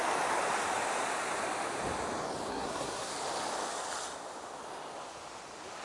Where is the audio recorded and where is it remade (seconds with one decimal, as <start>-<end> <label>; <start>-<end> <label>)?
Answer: 0.0-2.5 recorded; 2.5-3.1 remade; 3.1-5.8 recorded